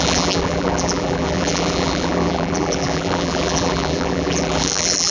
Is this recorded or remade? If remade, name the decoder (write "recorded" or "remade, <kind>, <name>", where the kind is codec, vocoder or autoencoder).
remade, vocoder, BigVGAN v2